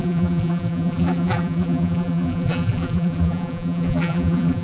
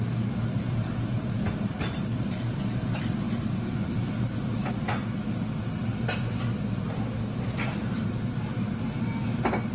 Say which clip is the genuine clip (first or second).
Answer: second